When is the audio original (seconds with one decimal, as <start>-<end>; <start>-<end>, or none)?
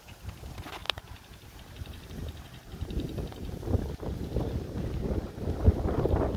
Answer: 0.0-0.8; 3.6-6.4